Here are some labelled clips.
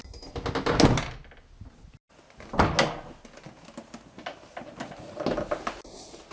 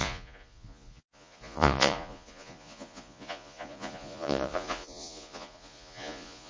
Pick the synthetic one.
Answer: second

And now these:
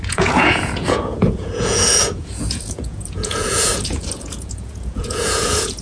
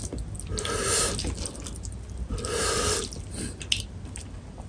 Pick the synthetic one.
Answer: first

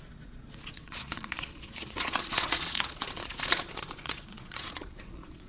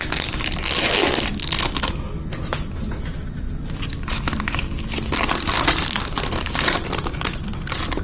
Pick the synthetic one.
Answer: first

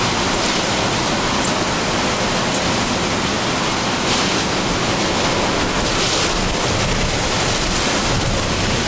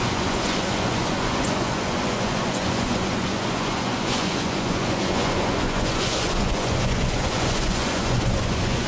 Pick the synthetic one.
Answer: second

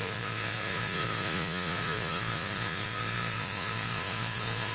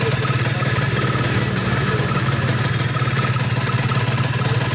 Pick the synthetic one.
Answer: first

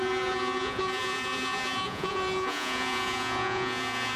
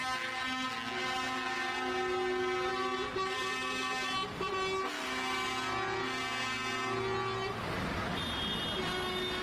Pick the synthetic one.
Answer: first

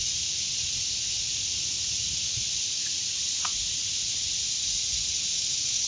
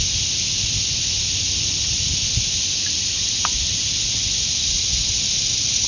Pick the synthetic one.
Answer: first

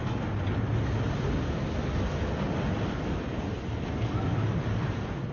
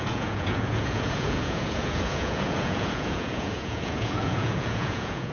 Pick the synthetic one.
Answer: second